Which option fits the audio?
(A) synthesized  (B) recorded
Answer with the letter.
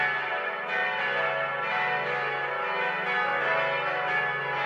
B